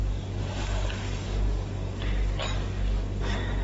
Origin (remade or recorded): remade